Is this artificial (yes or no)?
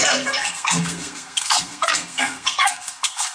yes